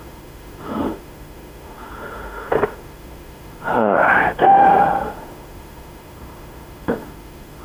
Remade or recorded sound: remade